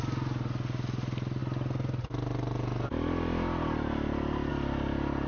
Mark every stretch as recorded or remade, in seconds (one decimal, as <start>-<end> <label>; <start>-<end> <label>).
0.0-5.3 recorded